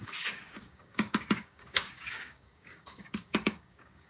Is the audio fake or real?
fake